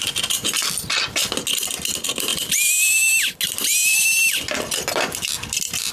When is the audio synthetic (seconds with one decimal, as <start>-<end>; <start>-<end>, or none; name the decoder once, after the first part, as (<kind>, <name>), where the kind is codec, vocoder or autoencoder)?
none